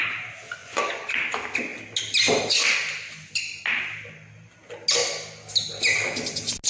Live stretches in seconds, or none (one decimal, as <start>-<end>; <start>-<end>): 0.0-0.6; 1.1-6.7